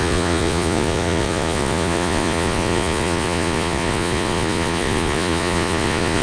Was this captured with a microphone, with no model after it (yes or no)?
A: no